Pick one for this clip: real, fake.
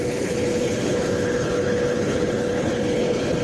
fake